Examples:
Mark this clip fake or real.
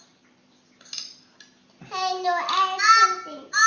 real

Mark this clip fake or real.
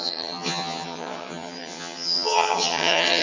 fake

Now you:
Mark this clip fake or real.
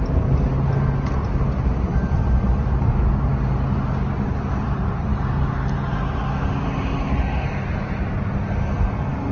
real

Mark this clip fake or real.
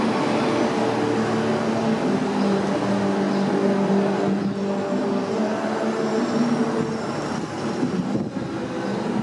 real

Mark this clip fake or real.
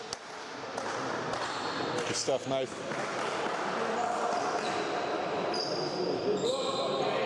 real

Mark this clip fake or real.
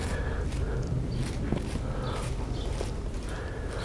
real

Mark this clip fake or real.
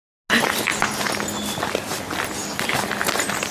real